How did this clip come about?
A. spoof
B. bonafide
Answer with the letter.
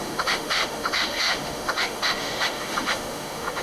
A